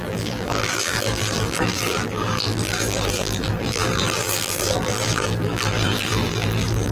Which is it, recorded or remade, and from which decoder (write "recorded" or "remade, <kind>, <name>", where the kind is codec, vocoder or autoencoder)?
remade, vocoder, BigVGAN v2